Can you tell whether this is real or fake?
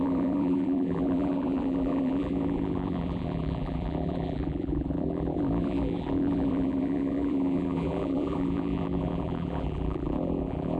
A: fake